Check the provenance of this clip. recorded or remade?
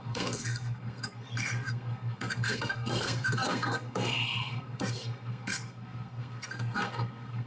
remade